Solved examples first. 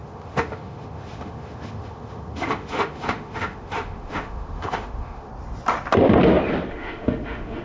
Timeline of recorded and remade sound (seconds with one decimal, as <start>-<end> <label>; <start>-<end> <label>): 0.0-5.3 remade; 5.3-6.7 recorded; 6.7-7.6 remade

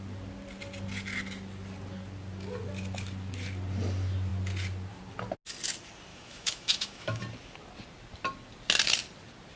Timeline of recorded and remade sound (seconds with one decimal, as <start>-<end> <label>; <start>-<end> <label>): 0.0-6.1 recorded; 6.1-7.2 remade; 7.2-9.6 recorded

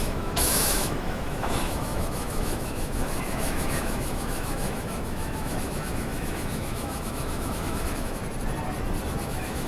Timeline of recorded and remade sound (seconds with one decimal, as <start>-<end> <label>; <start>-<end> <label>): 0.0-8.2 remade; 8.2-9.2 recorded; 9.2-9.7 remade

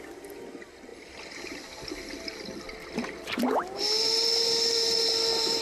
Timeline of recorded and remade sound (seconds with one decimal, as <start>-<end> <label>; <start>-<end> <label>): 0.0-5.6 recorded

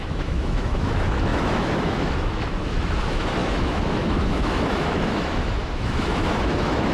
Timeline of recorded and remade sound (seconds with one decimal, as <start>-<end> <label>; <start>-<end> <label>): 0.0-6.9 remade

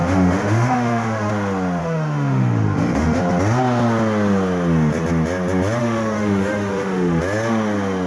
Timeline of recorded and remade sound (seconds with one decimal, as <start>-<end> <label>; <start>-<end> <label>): 0.0-1.3 remade; 1.3-1.8 recorded; 1.8-3.2 remade; 3.2-5.8 recorded; 5.8-7.2 remade; 7.2-8.1 recorded